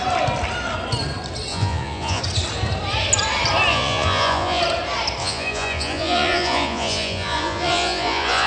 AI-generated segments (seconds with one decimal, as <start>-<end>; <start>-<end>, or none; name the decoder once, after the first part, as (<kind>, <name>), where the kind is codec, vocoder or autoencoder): 1.5-2.2 (vocoder, Vocos); 3.7-4.6; 5.2-8.5